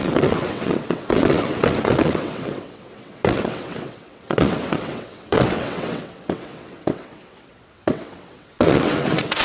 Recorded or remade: remade